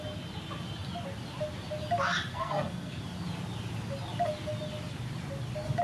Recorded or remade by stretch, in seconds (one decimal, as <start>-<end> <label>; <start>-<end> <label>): 0.0-2.3 recorded; 2.3-3.0 remade; 3.0-5.8 recorded

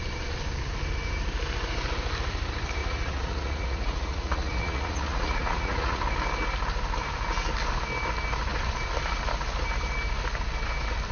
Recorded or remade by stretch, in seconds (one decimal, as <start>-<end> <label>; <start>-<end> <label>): 0.0-2.8 recorded; 2.8-6.0 remade; 6.0-11.1 recorded

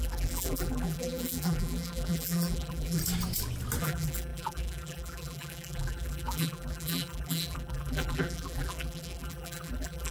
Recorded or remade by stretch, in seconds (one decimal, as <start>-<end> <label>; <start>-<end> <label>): 0.0-3.0 remade; 3.0-3.8 recorded; 3.8-10.1 remade

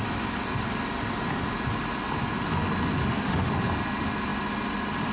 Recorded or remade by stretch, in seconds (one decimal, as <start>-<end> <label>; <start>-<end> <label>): 0.0-3.0 recorded; 3.0-3.5 remade; 3.5-5.1 recorded

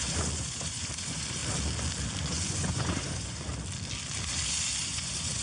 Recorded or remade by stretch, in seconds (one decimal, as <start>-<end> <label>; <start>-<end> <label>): 0.0-1.4 remade; 1.4-2.2 recorded; 2.2-3.5 remade; 3.5-4.8 recorded; 4.8-5.4 remade